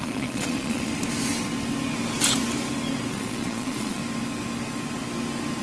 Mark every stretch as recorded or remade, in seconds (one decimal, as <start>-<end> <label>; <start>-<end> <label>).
0.0-0.9 remade; 0.9-3.1 recorded; 3.1-4.0 remade; 4.0-5.6 recorded